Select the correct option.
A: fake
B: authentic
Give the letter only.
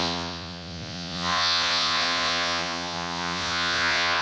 A